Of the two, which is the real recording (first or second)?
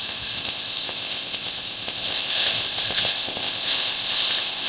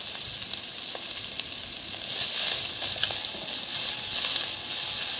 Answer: second